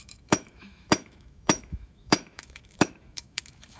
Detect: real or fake fake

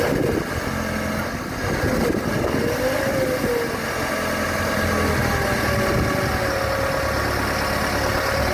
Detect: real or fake real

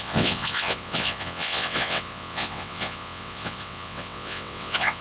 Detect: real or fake fake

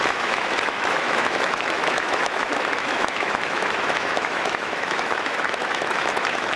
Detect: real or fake fake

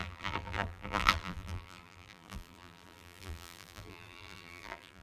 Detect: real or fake fake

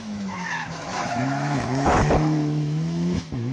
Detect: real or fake fake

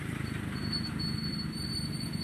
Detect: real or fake fake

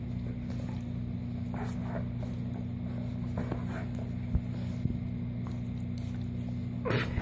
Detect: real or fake real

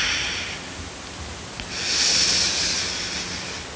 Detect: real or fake real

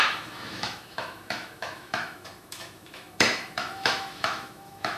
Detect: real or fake fake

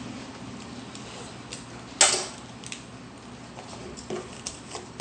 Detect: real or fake real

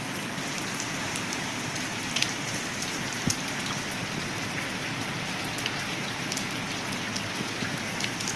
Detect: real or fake real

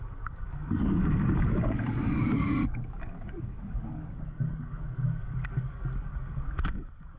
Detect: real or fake fake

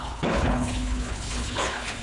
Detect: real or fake fake